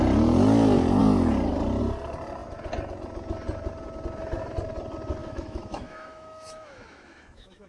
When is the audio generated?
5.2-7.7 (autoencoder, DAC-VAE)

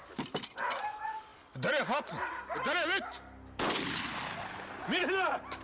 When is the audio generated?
none

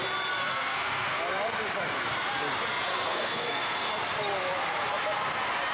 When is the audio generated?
0.4-1.2 (codec, SNAC); 2.9-3.9

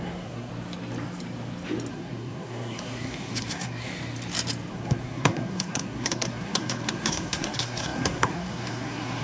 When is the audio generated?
0.0-0.5 (codec, SNAC); 1.9-3.9; 4.7-9.2

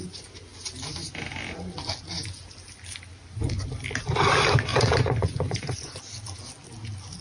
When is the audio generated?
4.7-6.0 (vocoder, Vocos)

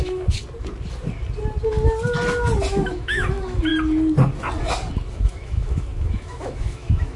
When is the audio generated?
0.0-0.4 (autoencoder, DAC-VAE); 2.7-3.7; 5.1-7.2

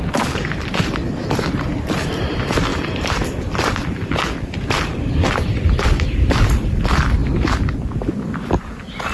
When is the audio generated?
0.0-7.2 (vocoder, BigVGAN v2); 8.2-9.1

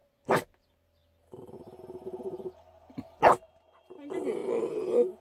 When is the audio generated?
none